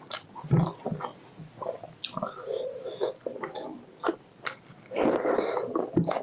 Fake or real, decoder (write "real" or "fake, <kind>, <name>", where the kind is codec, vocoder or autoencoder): real